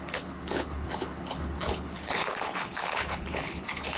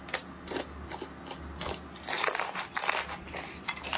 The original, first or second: second